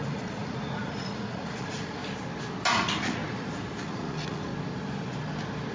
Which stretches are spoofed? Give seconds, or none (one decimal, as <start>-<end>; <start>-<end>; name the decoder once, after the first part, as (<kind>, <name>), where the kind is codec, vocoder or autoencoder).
0.0-2.0 (vocoder, Vocos); 2.7-3.2; 3.8-4.5